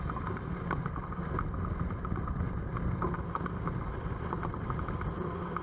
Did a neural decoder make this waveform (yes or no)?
no